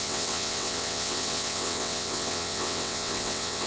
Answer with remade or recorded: remade